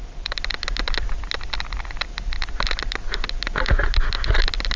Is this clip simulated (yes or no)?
no